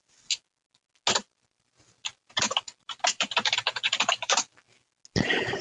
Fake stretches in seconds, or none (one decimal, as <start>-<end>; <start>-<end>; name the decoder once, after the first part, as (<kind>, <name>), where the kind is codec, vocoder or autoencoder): 1.2-4.6 (vocoder, BigVGAN v2)